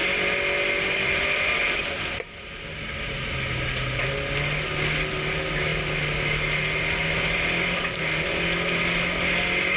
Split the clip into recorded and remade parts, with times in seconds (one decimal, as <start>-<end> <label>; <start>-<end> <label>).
0.0-9.8 recorded